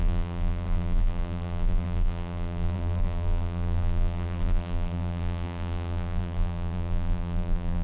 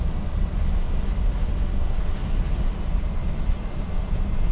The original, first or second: second